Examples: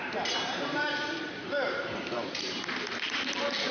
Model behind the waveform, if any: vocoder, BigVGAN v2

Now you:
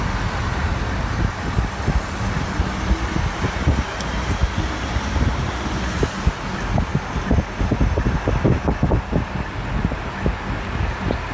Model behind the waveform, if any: none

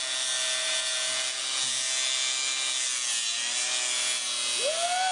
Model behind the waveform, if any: none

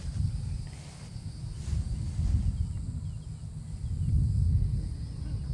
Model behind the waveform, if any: none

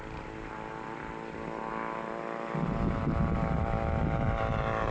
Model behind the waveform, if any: none